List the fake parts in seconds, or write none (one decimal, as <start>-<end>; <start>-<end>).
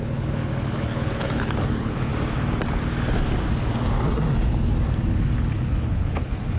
0.0-2.1; 5.1-6.6